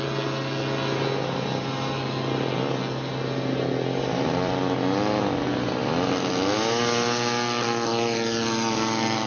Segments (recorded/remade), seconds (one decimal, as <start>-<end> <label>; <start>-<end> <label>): 0.0-9.3 recorded

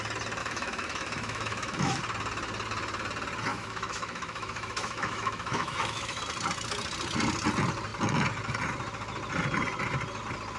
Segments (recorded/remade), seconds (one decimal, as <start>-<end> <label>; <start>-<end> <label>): 0.0-0.4 recorded; 0.4-2.0 remade; 2.0-3.5 recorded; 3.5-6.2 remade; 6.2-10.6 recorded